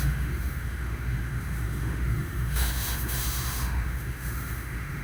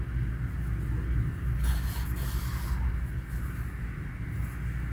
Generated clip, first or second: first